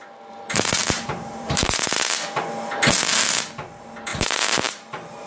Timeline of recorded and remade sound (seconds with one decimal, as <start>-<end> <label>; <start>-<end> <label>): 0.0-0.8 recorded; 0.8-1.9 remade; 1.9-4.1 recorded; 4.1-5.3 remade